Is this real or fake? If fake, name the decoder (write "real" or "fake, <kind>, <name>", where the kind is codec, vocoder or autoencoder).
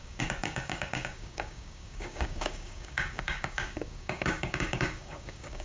fake, codec, DAC